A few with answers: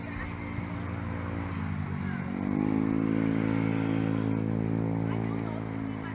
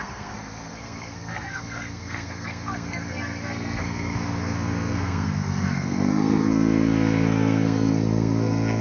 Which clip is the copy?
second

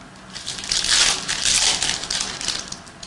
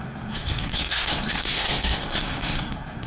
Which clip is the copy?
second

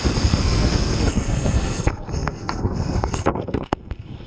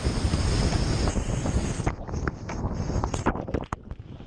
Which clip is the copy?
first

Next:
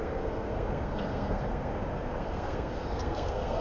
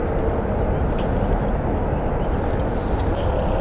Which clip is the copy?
first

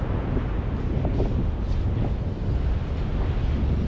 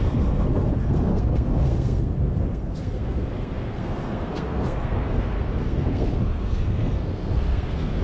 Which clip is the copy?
second